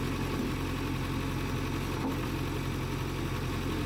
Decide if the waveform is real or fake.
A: real